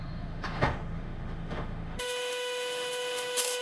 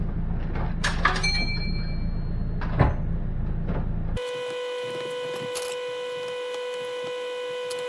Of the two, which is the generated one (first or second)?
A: first